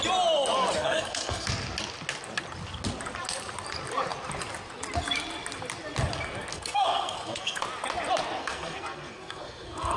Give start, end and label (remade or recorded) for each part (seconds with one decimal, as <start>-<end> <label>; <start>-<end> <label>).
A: 0.0-0.8 recorded; 0.8-1.5 remade; 1.5-6.5 recorded; 6.5-7.6 remade; 7.6-8.4 recorded; 8.4-10.0 remade